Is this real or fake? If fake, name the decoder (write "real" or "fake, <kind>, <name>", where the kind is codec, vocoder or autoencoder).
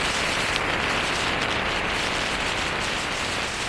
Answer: real